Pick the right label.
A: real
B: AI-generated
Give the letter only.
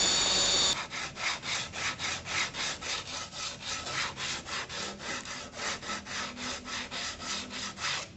A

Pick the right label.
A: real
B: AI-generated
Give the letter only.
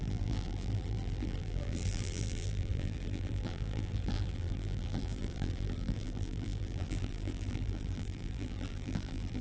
B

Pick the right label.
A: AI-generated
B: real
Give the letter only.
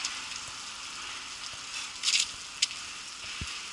B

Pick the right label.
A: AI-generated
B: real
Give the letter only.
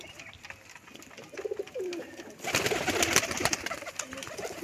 B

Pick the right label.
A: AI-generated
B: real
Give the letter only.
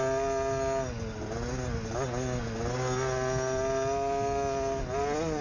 B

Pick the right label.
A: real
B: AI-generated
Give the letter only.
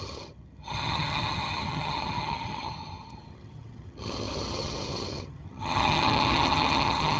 B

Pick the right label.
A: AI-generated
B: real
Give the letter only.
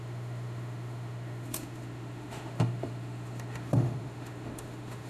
A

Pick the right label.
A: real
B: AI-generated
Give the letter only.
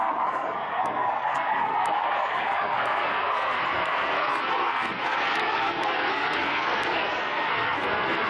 B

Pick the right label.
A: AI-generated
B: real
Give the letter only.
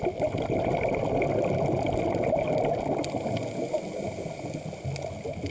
B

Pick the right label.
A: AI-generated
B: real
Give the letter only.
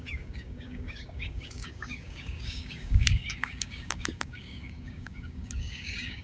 A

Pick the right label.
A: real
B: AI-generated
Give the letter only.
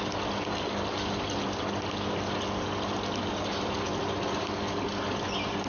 A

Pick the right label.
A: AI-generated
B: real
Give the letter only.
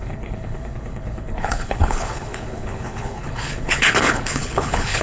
A